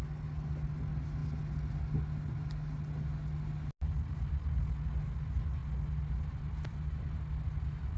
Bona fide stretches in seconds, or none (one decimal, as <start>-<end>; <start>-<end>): 0.0-8.0